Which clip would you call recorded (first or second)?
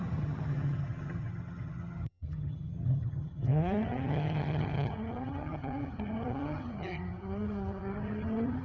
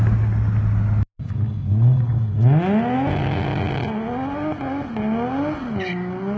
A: second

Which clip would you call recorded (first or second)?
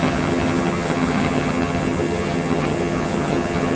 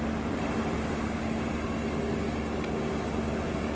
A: second